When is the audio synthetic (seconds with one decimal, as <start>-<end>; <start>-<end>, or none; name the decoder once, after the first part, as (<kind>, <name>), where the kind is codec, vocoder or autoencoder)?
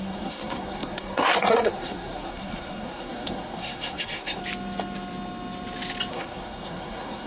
0.0-4.4 (codec, SNAC); 6.1-7.3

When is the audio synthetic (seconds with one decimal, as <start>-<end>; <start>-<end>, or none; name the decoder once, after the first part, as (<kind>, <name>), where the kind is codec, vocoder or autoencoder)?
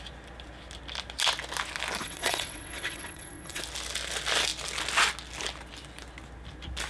2.0-3.6 (vocoder, WaveNeXt)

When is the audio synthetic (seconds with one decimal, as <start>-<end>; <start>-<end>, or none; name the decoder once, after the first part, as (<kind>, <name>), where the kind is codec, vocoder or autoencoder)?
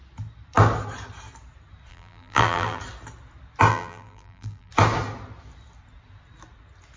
1.9-2.8 (vocoder, BigVGAN v2); 3.7-4.7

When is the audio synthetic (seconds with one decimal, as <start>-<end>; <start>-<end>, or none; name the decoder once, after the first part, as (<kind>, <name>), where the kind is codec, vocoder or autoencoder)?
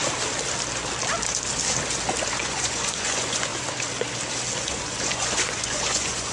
2.4-3.5 (vocoder, Vocos); 4.6-6.3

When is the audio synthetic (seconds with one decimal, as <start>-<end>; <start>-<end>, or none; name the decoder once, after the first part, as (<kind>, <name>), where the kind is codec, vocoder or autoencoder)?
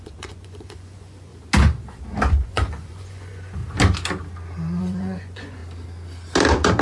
0.0-1.3 (vocoder, Vocos); 2.3-3.6; 4.8-5.6